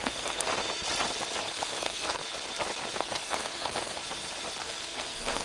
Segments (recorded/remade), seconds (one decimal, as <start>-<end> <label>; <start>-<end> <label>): 0.0-0.5 remade; 0.5-1.4 recorded; 1.4-2.2 remade; 2.2-3.0 recorded; 3.0-4.0 remade; 4.0-4.6 recorded; 4.6-5.4 remade